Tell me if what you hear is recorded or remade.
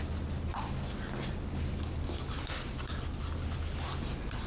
recorded